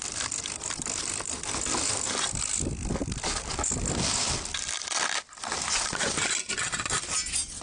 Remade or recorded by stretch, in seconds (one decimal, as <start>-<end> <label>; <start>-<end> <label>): 0.0-7.6 recorded